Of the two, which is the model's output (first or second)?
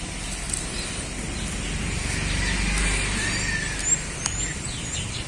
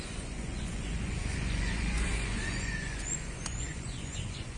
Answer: second